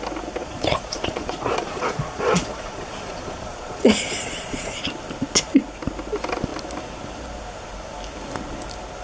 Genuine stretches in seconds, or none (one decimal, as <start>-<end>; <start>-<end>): 0.0-0.4; 4.8-9.0